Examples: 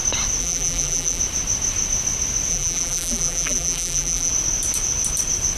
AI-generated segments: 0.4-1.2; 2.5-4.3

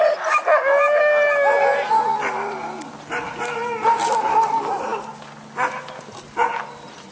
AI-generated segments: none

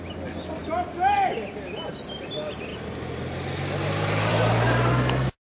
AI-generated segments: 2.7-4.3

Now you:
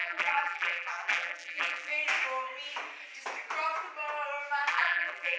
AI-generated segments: 0.0-1.9; 4.7-5.4